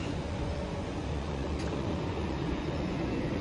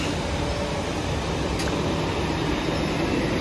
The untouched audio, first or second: second